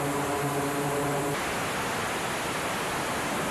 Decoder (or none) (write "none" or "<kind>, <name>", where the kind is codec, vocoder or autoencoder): none